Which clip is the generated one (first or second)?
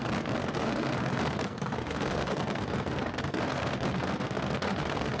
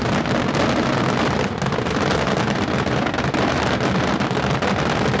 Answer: first